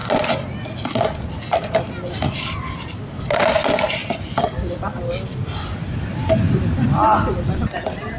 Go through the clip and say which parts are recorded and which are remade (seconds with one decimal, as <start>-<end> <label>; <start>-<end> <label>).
0.0-4.0 recorded; 4.0-5.0 remade; 5.0-8.2 recorded